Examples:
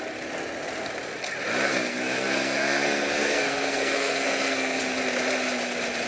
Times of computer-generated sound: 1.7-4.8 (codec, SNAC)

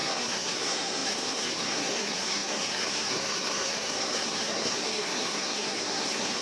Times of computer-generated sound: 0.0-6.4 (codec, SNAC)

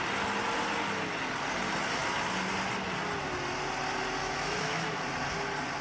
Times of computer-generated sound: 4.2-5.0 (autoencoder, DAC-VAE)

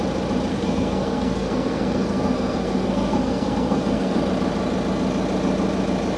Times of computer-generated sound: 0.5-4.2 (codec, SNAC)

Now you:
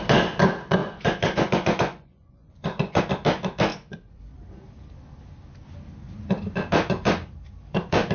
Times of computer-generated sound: 0.8-3.0 (vocoder, Vocos); 3.7-4.2

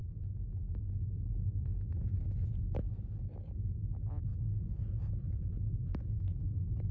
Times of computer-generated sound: 0.0-0.6 (vocoder, Vocos); 4.3-5.5

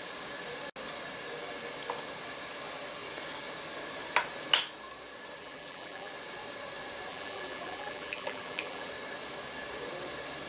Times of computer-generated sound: 5.4-6.1 (vocoder, BigVGAN v2); 7.1-8.9

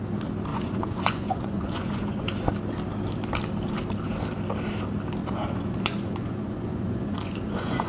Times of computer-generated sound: 0.5-2.5 (vocoder, Vocos); 5.2-7.9